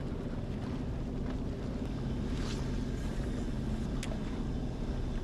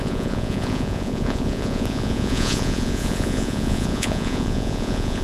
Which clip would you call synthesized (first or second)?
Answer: second